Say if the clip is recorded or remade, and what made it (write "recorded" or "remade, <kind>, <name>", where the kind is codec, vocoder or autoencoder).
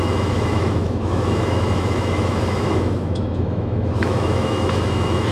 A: remade, autoencoder, DAC-VAE